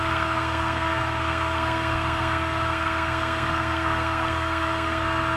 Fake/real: fake